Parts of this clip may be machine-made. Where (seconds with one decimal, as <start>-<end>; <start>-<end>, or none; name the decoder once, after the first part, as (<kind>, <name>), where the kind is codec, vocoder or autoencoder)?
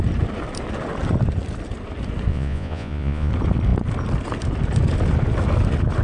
2.3-3.3 (vocoder, Vocos)